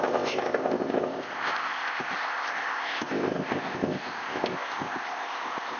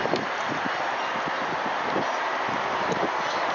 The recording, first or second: second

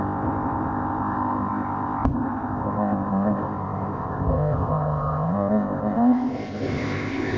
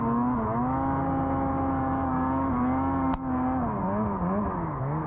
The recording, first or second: second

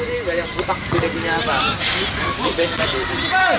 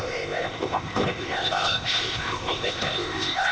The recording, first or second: first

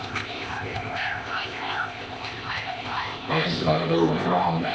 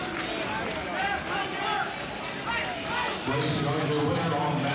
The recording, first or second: second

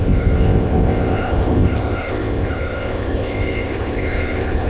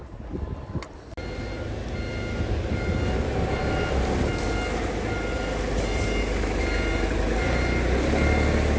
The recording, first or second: second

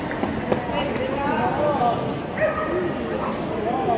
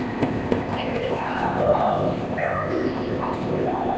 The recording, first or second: first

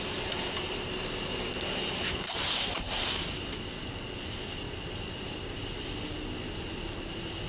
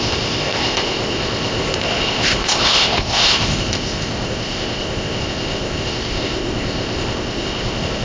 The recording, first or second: first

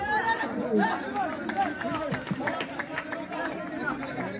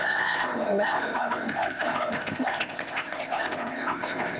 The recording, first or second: first